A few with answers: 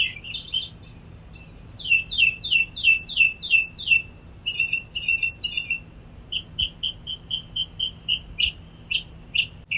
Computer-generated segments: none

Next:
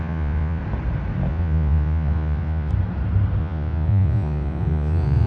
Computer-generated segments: 0.0-0.6 (vocoder, Vocos); 1.3-2.7; 3.4-5.3